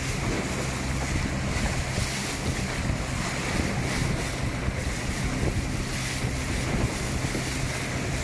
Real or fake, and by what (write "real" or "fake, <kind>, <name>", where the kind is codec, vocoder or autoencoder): real